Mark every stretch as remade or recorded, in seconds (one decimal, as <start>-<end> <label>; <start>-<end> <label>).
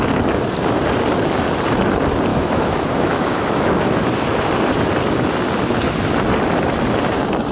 0.0-2.3 recorded; 2.3-4.0 remade; 4.0-7.5 recorded